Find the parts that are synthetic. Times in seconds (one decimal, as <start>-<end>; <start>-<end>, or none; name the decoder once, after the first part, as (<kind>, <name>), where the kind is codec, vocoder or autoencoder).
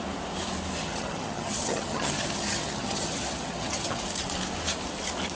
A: 0.8-4.0 (vocoder, HiFi-GAN)